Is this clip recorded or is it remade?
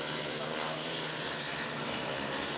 remade